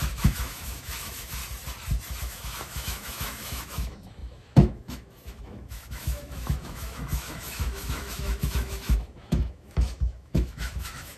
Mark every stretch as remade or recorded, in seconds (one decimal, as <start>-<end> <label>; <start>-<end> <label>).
0.0-1.4 remade; 1.4-2.2 recorded; 2.2-11.2 remade